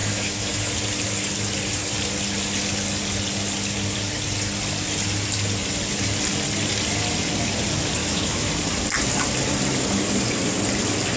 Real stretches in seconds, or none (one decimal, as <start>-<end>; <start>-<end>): 0.7-8.0; 8.5-11.2